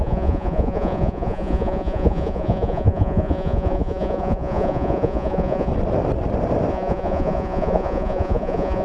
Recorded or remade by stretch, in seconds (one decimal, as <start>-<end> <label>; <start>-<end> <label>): 0.0-5.7 remade; 5.7-6.7 recorded; 6.7-8.8 remade